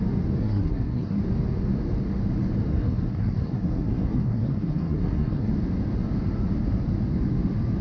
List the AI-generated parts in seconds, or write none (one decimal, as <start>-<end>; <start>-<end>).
0.4-1.2; 2.7-5.5

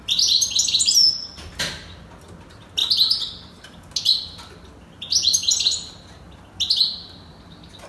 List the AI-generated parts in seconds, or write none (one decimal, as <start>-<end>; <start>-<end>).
none

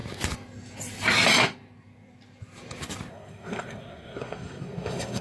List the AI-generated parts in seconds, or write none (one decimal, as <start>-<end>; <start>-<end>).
3.1-5.2

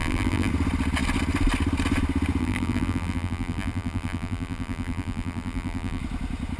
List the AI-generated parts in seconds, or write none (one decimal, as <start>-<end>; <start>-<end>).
0.0-0.5; 2.4-6.0

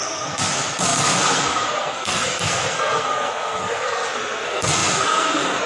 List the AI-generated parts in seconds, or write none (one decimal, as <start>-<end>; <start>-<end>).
0.0-5.7

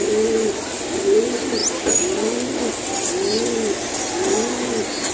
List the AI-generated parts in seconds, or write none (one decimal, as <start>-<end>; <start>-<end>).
none

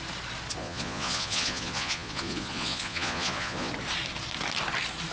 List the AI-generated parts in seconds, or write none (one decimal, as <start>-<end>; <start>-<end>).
0.6-3.7